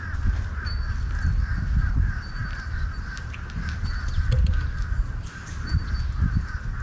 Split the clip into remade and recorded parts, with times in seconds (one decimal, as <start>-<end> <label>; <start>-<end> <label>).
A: 0.0-6.8 recorded

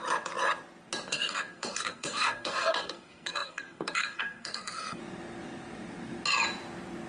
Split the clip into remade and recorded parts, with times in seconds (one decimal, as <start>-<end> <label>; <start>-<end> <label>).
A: 0.0-1.1 recorded; 1.1-5.0 remade; 5.0-7.1 recorded